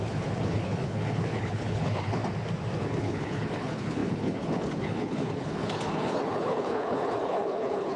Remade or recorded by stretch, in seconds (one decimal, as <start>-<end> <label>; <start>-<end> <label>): 0.0-2.2 remade; 2.2-3.0 recorded; 3.0-8.0 remade